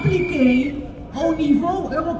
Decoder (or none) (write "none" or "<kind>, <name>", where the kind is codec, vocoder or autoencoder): none